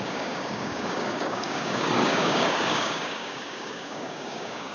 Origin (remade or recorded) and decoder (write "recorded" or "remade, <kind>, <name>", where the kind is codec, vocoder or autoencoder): remade, codec, DAC